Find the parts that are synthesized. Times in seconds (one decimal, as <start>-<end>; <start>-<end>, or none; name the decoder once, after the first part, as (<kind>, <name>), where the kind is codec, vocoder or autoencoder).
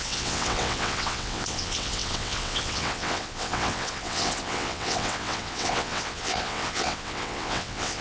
0.0-8.0 (vocoder, WaveNeXt)